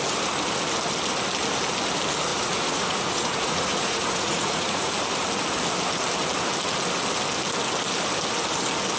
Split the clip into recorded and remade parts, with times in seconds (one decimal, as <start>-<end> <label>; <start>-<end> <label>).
0.0-2.3 recorded; 2.3-4.9 remade; 4.9-9.0 recorded